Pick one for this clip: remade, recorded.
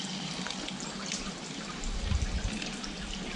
recorded